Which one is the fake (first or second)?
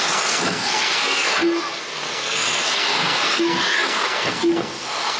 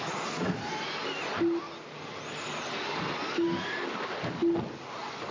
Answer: first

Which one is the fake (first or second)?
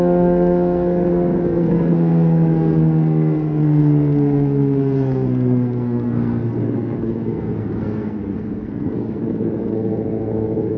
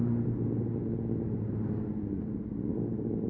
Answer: first